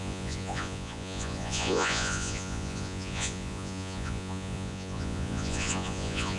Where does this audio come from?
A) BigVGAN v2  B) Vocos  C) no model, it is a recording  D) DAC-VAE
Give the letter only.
B